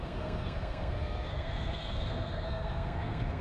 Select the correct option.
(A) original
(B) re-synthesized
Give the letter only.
B